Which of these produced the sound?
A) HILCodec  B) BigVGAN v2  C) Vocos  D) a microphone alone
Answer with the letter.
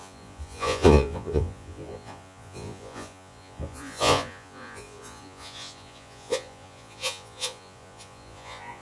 C